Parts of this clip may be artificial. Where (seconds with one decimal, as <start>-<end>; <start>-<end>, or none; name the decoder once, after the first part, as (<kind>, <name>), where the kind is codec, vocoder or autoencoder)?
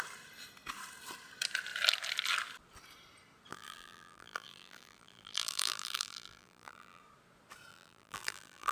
3.5-7.0 (vocoder, BigVGAN v2); 7.7-8.7